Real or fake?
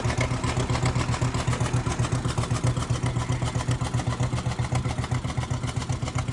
real